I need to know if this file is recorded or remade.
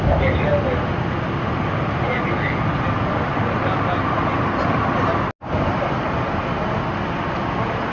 recorded